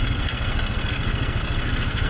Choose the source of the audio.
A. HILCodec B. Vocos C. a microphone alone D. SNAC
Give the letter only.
D